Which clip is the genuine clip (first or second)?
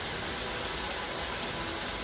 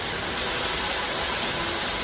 first